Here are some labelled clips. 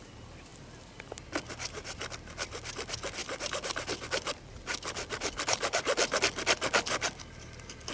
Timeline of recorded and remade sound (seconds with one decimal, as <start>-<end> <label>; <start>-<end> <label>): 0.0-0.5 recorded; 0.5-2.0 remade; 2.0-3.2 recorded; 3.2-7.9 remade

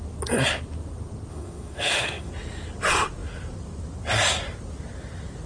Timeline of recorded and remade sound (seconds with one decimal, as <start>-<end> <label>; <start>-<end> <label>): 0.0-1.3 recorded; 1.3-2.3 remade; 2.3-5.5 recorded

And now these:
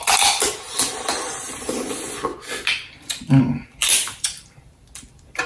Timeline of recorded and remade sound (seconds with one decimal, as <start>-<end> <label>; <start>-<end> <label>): 0.0-3.8 recorded; 3.8-4.6 remade; 4.6-5.5 recorded

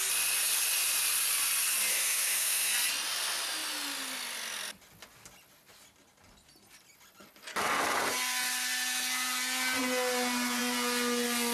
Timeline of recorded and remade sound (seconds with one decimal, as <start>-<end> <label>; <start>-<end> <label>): 0.0-1.9 recorded; 1.9-2.7 remade; 2.7-11.5 recorded

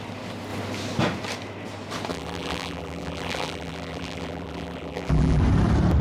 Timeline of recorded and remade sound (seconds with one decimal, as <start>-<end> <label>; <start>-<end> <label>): 0.0-2.1 recorded; 2.1-5.4 remade; 5.4-6.0 recorded